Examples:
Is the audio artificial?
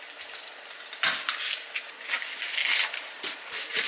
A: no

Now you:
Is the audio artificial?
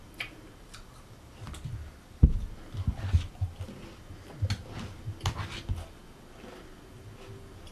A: no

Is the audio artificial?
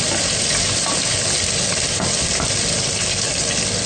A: yes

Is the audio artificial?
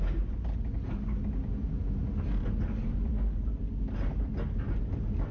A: no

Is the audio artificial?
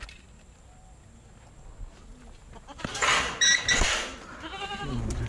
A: no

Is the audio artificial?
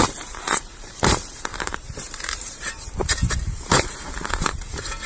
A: yes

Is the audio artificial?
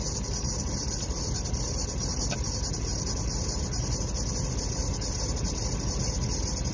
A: no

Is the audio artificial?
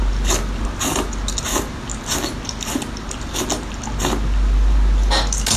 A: no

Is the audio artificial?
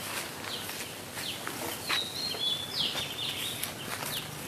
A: no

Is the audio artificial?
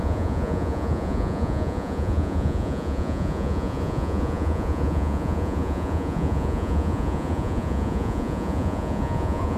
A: yes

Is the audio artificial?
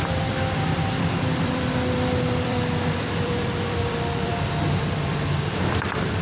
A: yes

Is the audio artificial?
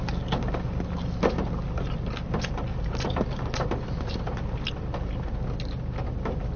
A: no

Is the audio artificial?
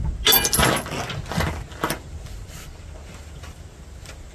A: no